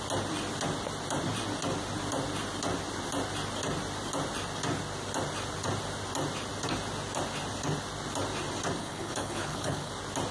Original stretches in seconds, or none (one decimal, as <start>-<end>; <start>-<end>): 0.0-8.8; 9.9-10.3